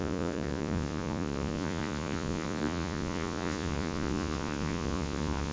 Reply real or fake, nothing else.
fake